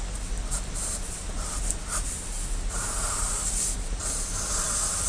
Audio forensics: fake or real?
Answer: real